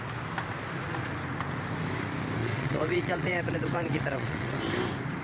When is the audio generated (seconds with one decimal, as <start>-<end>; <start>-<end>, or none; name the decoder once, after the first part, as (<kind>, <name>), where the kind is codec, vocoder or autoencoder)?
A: 2.4-4.6 (vocoder, WaveNeXt)